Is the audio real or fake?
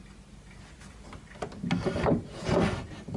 real